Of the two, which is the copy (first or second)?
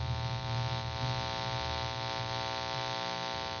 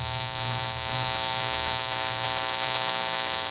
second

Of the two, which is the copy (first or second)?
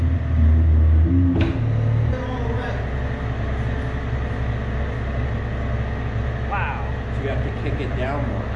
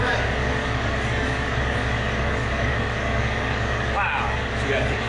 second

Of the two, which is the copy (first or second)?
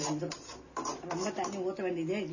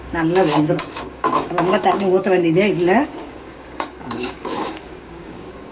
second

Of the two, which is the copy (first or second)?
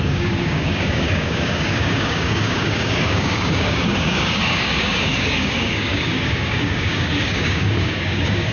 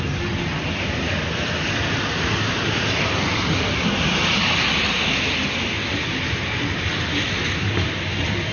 first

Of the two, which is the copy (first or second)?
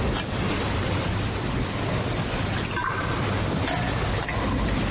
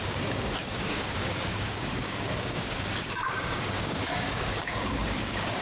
second